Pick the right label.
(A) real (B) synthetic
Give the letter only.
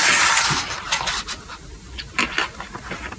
A